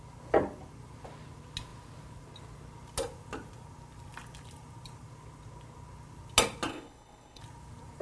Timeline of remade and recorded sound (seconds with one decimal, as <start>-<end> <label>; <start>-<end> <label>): 0.0-6.7 recorded; 6.7-7.4 remade; 7.4-8.0 recorded